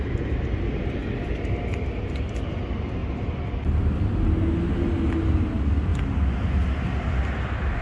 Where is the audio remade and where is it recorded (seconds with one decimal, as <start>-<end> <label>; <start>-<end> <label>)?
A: 0.0-7.8 recorded